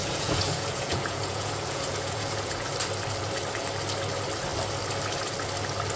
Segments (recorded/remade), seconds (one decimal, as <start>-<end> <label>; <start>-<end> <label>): 0.0-2.7 remade; 2.7-6.0 recorded